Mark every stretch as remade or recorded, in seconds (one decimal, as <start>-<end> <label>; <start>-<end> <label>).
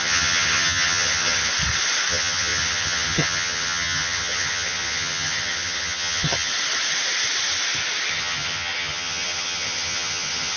0.0-1.5 remade; 1.5-2.1 recorded; 2.1-6.5 remade; 6.5-8.1 recorded; 8.1-10.6 remade